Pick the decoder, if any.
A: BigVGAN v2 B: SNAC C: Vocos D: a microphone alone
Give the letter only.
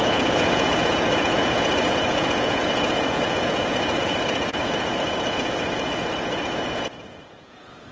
C